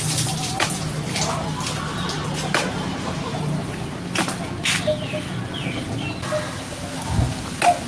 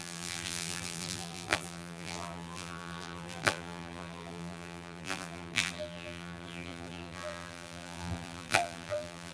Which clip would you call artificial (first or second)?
second